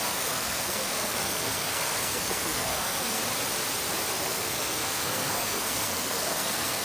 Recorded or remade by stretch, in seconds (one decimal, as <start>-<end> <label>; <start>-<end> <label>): 0.0-3.2 remade; 3.2-4.1 recorded; 4.1-6.8 remade